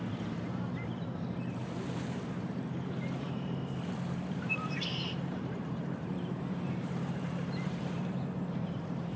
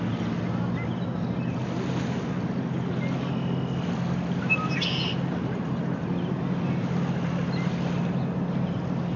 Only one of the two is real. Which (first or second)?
second